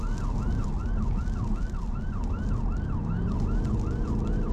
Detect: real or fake real